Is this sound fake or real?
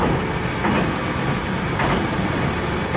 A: real